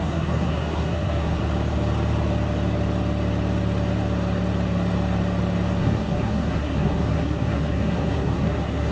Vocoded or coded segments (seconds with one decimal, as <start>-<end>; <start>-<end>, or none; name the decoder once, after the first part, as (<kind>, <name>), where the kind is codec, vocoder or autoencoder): 0.0-1.4 (codec, SNAC); 5.8-8.9